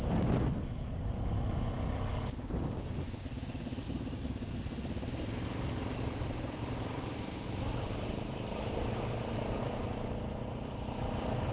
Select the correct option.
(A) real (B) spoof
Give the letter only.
A